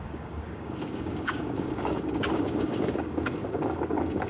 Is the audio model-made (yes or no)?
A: yes